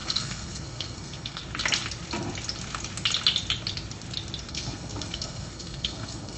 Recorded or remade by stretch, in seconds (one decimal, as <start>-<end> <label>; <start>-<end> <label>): 0.0-1.4 remade; 1.4-4.5 recorded; 4.5-6.4 remade